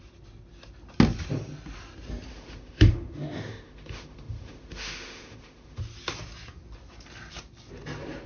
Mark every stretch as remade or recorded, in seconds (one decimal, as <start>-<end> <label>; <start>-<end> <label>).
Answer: 0.0-2.3 recorded; 2.3-5.8 remade; 5.8-8.3 recorded